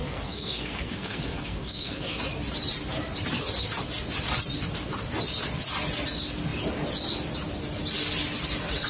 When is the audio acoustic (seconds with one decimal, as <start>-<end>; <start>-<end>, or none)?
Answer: 2.2-8.9